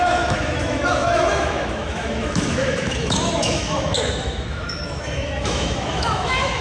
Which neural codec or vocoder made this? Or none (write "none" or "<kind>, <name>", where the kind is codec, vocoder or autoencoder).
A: autoencoder, DAC-VAE